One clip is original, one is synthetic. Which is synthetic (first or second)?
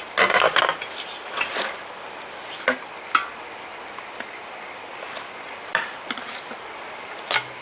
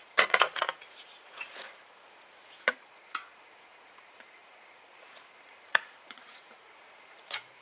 second